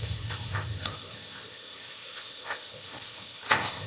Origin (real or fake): fake